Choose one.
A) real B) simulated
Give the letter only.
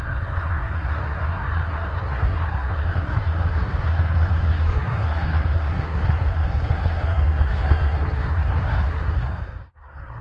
B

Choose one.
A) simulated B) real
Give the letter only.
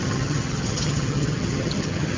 A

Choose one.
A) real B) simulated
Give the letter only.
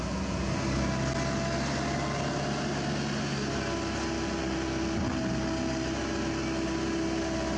A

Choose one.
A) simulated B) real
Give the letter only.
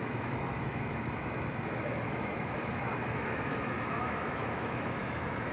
A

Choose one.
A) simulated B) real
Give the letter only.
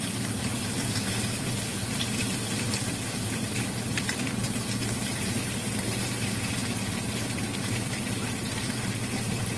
A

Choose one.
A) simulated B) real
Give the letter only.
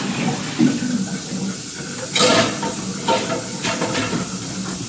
B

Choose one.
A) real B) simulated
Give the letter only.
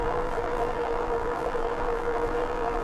B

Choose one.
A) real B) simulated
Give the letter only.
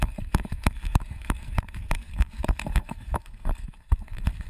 B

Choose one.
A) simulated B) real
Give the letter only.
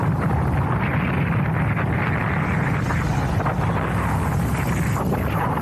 B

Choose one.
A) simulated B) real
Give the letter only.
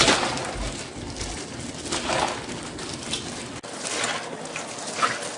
B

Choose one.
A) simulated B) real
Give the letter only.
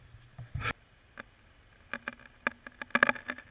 B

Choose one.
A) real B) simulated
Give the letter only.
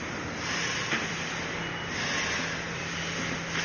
A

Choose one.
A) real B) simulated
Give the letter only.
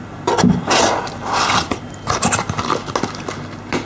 A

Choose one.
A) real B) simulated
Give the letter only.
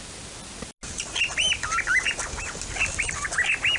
A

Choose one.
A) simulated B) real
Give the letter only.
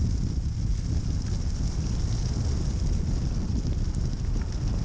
B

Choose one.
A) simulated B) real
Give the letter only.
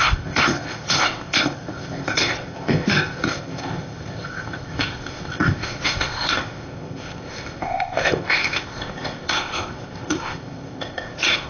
A